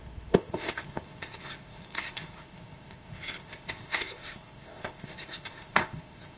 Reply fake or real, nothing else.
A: fake